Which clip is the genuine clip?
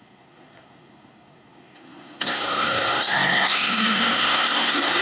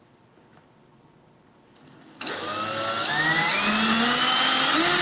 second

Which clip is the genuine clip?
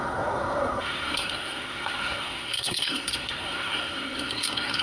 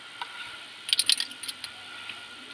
second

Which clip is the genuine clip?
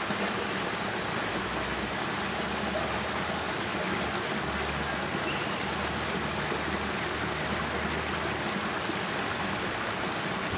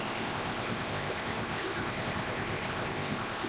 first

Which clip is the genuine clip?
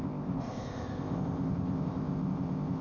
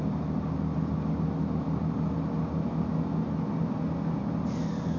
second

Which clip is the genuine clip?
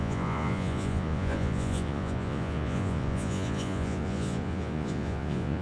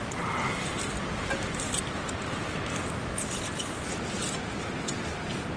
second